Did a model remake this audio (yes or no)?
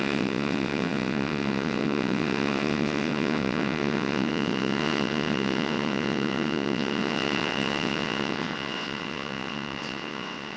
yes